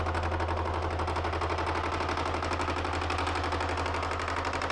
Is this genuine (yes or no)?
yes